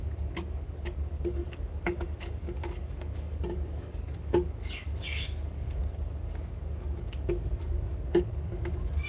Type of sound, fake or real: fake